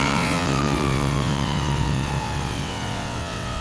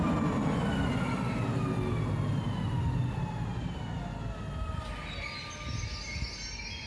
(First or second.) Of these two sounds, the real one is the second